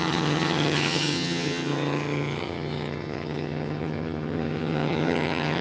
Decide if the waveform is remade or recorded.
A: remade